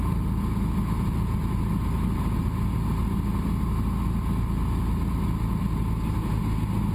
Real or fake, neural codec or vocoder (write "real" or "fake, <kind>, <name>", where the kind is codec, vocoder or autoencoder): real